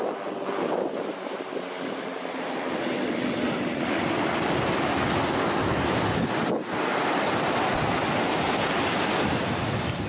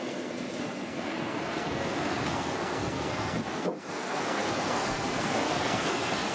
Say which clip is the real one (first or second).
first